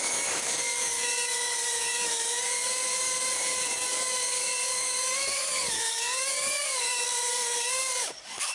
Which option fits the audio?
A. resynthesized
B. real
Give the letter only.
A